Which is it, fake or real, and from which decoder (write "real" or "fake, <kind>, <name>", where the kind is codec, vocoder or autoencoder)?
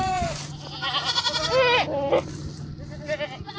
real